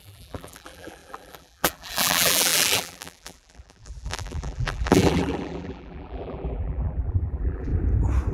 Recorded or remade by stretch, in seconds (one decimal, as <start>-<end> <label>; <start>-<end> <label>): 0.0-7.7 remade; 7.7-8.3 recorded

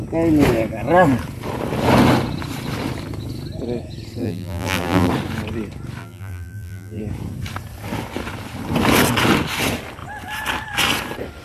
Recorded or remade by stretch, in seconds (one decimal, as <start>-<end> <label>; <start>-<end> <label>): 0.0-4.2 recorded; 4.2-5.1 remade; 5.1-6.0 recorded; 6.0-7.0 remade; 7.0-11.4 recorded

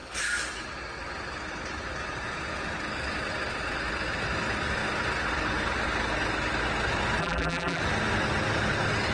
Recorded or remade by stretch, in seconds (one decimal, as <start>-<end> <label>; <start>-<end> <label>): 0.0-7.2 recorded; 7.2-7.8 remade; 7.8-9.1 recorded